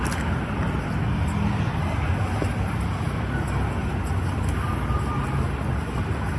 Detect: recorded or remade recorded